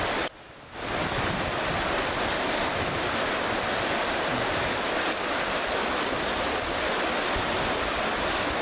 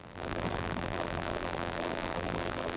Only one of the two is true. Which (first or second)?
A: first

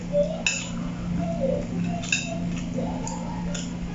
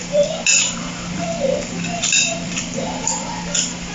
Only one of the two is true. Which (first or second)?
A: first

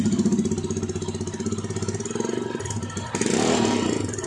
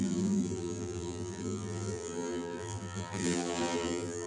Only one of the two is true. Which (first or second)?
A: first